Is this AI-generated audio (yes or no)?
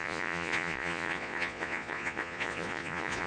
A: yes